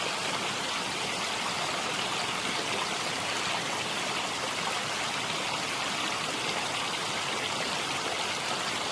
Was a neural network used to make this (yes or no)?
no